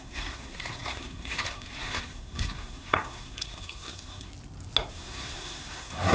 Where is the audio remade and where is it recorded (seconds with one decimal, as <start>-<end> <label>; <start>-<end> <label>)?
0.0-4.3 remade; 4.3-4.9 recorded; 4.9-6.1 remade